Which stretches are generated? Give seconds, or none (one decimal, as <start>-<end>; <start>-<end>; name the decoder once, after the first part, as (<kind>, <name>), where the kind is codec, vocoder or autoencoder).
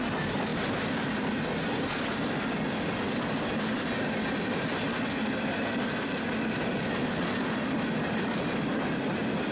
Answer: none